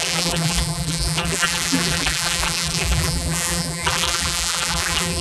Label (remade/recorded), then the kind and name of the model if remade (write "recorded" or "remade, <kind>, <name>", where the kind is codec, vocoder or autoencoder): remade, vocoder, BigVGAN v2